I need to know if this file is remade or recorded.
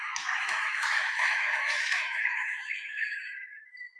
remade